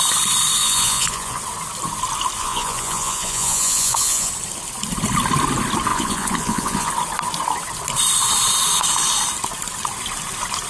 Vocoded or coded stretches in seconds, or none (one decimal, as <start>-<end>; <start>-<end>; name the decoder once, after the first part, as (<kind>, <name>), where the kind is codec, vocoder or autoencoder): 0.6-1.4 (vocoder, Vocos); 2.4-4.3; 5.9-6.9